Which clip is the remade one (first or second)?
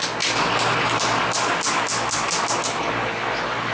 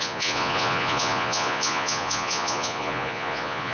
second